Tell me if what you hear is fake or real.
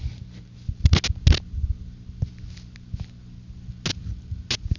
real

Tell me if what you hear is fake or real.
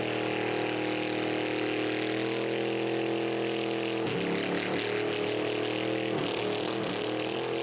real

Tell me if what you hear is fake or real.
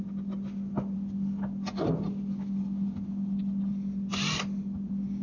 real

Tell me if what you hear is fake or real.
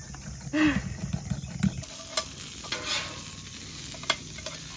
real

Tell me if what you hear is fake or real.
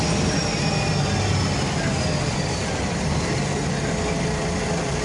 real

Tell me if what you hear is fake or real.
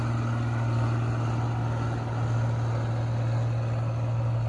real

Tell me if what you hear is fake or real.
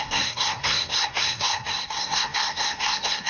fake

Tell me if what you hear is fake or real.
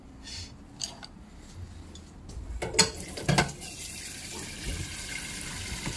real